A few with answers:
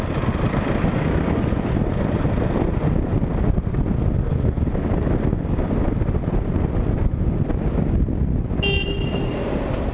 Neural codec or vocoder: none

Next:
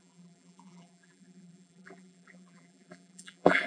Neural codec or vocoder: vocoder, BigVGAN v2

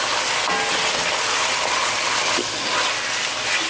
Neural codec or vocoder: none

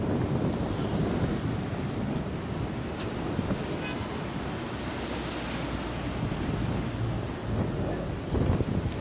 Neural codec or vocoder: none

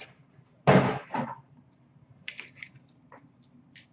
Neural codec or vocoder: none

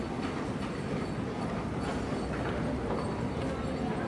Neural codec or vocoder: none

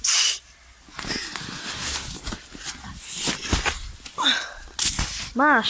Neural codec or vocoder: none